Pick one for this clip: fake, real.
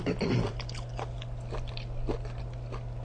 real